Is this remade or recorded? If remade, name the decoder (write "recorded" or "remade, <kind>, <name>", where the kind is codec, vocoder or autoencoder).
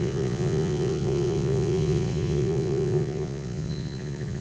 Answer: remade, vocoder, Vocos